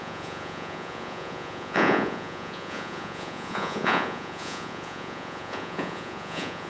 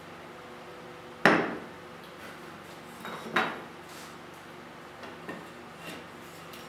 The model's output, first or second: first